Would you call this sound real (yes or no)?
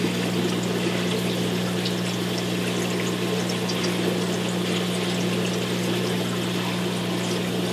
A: yes